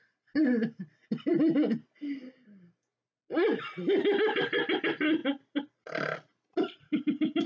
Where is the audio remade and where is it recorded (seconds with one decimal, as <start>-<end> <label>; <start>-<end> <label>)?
0.0-7.5 recorded